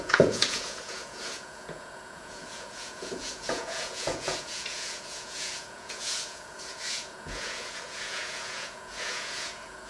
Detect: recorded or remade remade